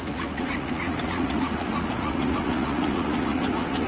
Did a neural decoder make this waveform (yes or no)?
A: yes